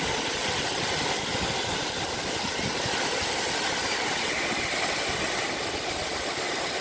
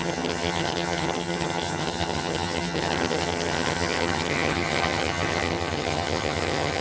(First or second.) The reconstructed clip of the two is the second